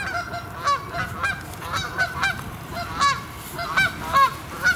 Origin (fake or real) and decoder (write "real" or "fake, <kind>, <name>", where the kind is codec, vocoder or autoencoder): real